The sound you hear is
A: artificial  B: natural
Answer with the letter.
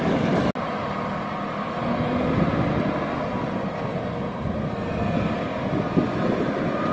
B